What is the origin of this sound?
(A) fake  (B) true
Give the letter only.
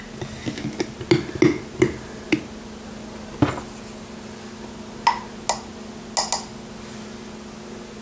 B